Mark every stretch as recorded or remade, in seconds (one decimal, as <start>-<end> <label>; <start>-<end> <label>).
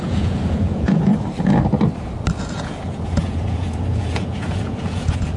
0.0-1.1 remade; 1.1-2.4 recorded; 2.4-5.4 remade